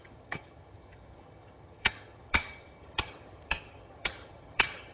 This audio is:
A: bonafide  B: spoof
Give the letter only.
B